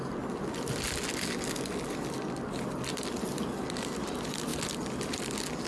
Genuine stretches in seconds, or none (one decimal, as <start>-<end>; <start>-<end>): 0.0-5.7